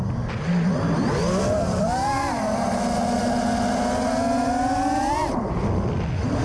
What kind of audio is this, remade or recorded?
recorded